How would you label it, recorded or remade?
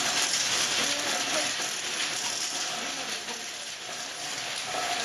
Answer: recorded